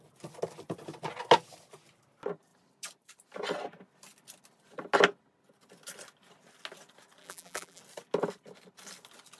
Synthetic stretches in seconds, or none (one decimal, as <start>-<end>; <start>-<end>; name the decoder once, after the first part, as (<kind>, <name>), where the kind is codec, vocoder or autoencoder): 7.2-7.8 (vocoder, BigVGAN v2)